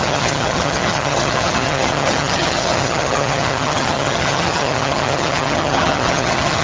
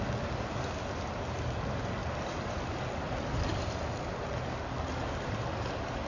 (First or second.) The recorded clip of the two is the second